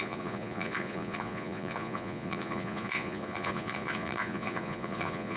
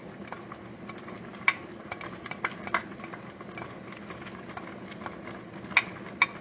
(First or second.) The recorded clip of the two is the second